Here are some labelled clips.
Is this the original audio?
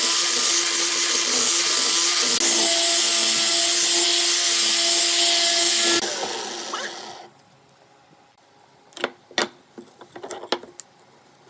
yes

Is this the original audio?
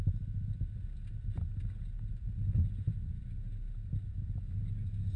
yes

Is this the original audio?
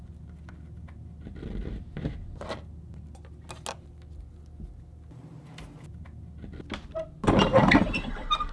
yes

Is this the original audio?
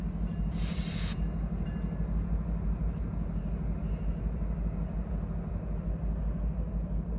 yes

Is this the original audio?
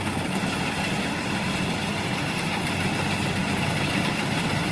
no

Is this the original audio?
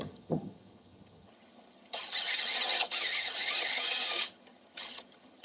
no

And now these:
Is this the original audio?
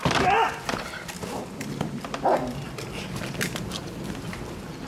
yes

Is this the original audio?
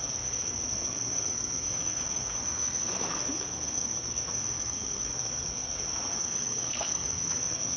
no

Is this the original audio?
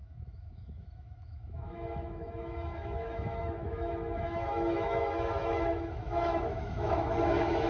no